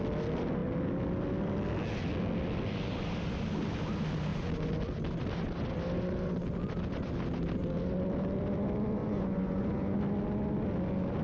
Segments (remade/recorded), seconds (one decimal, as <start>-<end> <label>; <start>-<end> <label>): 0.0-9.0 recorded; 9.0-10.0 remade; 10.0-11.2 recorded